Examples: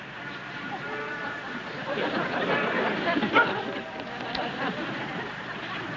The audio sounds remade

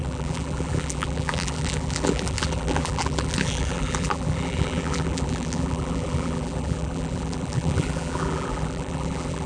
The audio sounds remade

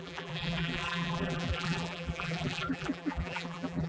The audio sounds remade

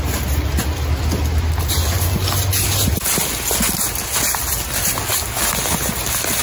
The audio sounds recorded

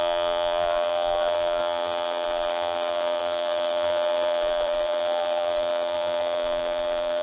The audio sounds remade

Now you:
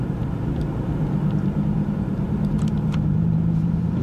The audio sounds remade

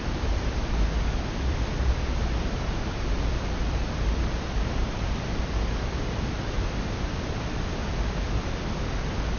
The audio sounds remade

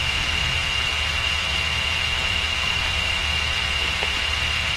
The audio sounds remade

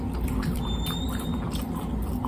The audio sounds recorded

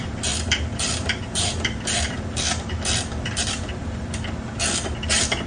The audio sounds remade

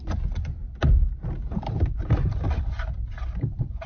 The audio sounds recorded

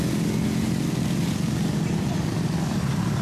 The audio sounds recorded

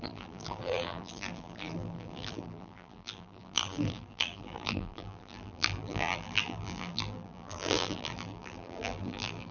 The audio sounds remade